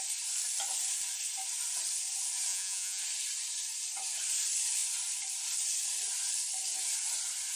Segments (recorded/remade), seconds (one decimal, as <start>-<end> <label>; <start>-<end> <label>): 0.0-2.5 recorded; 2.5-3.0 remade; 3.0-7.6 recorded